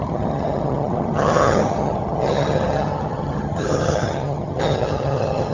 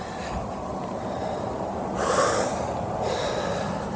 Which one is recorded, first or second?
second